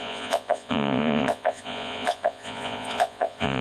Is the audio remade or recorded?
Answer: remade